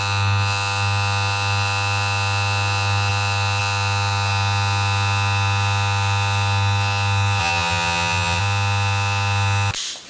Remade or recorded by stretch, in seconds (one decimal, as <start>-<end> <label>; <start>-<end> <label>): 0.0-7.4 recorded; 7.4-8.4 remade; 8.4-10.1 recorded